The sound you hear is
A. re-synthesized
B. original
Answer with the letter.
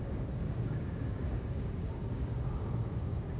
A